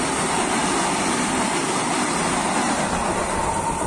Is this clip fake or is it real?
real